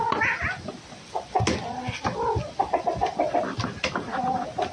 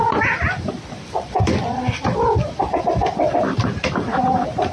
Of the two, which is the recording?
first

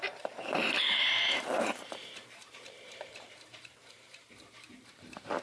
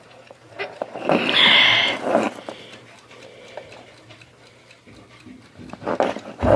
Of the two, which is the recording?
second